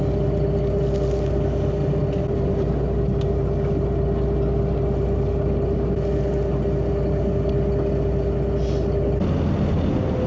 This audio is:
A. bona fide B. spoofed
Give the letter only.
A